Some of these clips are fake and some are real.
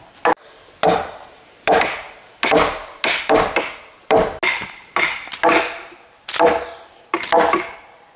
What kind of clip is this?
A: real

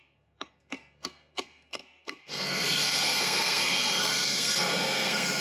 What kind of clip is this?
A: fake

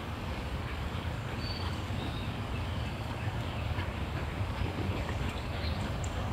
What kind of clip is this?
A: fake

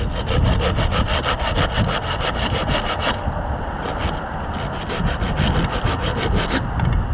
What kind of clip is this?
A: real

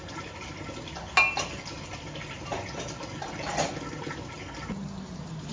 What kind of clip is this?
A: real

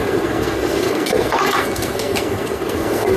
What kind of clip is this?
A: fake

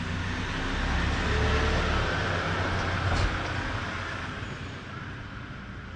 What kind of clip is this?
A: real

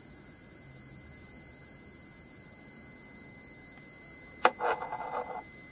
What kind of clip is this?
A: real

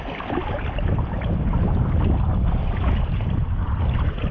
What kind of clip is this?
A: real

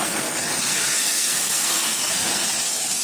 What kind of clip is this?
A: fake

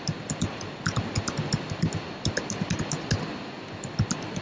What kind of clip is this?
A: real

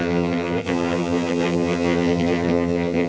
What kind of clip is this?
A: fake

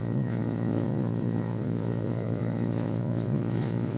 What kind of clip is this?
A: fake